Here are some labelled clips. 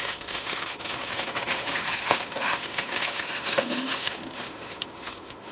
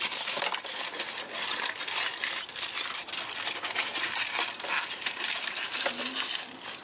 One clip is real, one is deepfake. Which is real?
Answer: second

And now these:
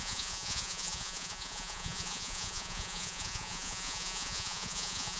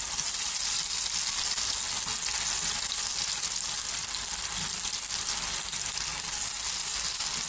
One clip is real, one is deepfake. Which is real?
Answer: second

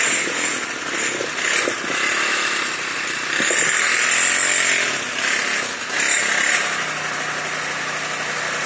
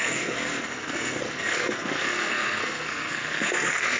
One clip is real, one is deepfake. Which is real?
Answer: first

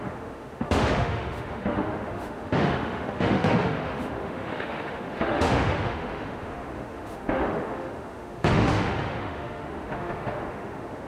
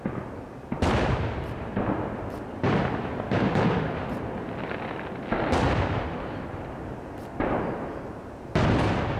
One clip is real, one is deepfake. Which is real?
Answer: second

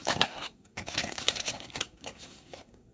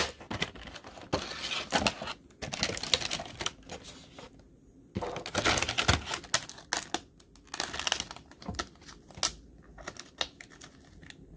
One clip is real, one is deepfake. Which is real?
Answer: second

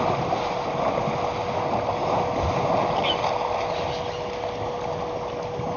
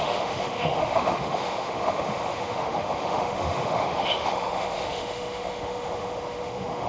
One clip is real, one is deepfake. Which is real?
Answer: first